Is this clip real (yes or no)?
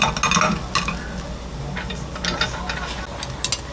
yes